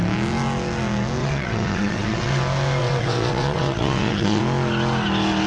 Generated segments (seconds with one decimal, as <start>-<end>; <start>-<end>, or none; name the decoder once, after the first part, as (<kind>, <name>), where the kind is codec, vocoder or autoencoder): 1.2-2.4 (vocoder, WaveNeXt); 2.8-4.4